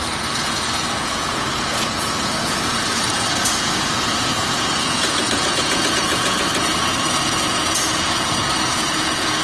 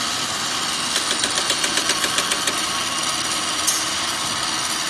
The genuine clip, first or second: second